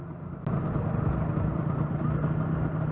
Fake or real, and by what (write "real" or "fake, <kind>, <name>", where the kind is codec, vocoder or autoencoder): real